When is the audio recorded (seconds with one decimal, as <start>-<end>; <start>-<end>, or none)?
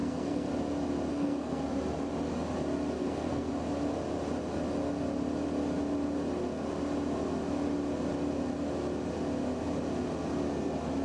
0.5-1.1; 1.6-3.0; 3.5-11.0